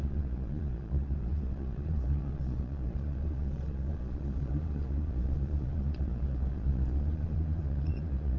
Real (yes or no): no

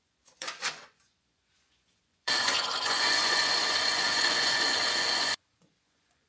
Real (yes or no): no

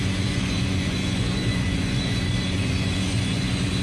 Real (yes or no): no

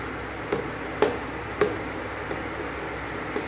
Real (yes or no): yes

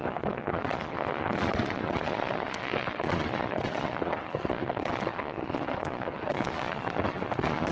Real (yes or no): no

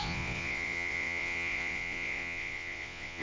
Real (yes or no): no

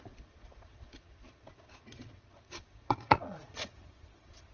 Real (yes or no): no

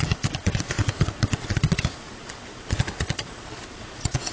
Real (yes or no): no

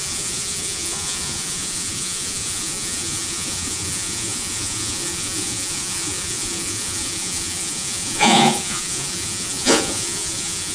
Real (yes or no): no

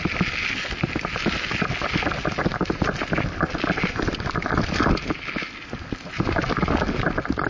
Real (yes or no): yes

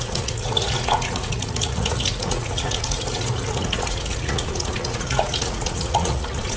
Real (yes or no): no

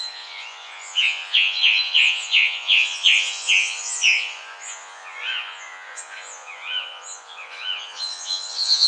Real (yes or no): no